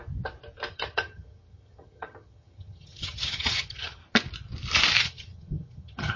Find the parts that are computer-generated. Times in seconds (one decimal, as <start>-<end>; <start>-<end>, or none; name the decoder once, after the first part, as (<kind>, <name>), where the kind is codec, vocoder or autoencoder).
0.7-4.0 (vocoder, HiFi-GAN); 5.0-6.2